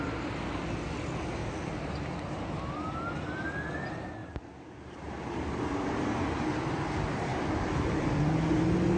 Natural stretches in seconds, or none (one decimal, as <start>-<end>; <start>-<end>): 0.0-1.4; 2.7-4.2; 6.2-7.3; 8.2-9.0